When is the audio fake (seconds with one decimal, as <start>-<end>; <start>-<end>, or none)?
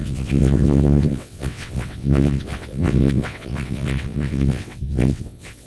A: 0.0-5.7